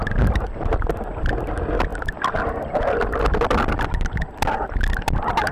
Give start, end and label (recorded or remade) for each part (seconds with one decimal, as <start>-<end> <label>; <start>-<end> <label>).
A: 0.0-5.5 recorded